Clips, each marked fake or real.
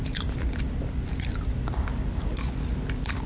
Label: real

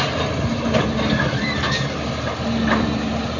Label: fake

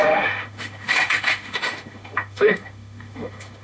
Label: fake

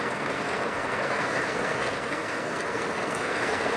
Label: fake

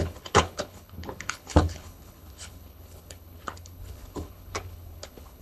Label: fake